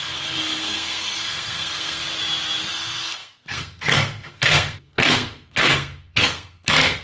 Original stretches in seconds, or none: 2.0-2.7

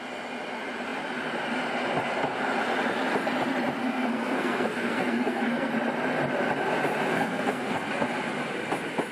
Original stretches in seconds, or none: 0.0-3.8; 5.7-7.1; 7.9-9.1